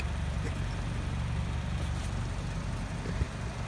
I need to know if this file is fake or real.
real